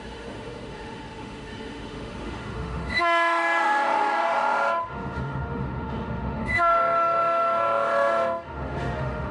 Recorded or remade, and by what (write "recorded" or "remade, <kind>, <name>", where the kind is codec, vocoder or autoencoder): remade, autoencoder, DAC-VAE